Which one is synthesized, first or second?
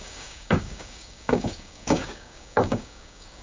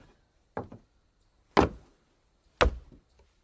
first